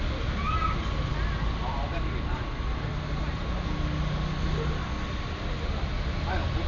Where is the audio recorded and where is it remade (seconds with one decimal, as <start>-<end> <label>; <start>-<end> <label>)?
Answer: 0.0-6.7 recorded